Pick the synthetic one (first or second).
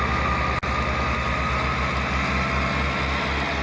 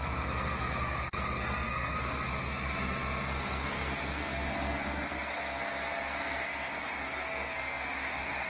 second